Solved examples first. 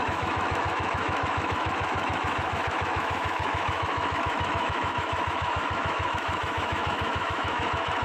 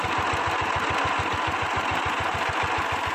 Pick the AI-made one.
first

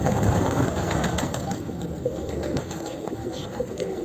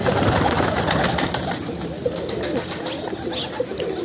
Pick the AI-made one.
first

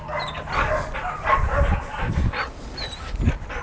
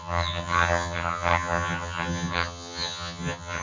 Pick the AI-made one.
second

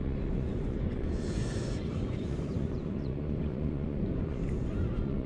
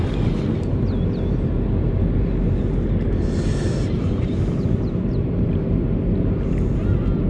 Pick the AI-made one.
first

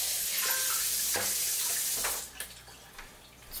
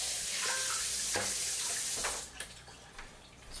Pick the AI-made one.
second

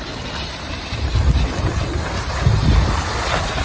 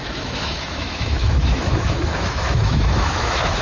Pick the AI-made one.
second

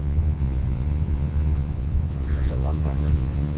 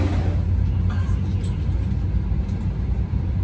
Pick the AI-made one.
first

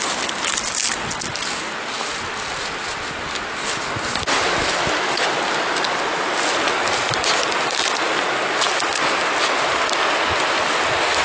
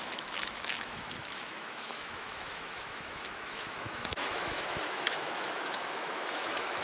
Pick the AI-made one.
second